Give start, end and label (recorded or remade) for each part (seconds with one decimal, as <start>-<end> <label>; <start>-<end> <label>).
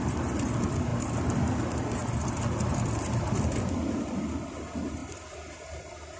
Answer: 0.0-0.9 recorded; 0.9-1.6 remade; 1.6-6.2 recorded